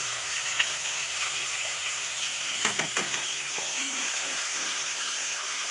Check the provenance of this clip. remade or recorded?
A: remade